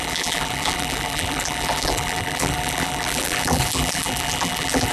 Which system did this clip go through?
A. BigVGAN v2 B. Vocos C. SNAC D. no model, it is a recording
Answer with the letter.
A